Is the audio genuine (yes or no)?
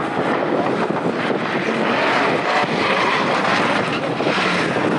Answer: yes